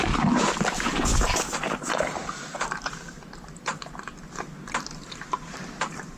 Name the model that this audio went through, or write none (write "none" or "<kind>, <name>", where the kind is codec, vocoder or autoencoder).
none